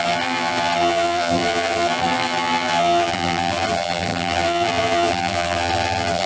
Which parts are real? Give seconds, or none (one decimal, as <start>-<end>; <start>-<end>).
none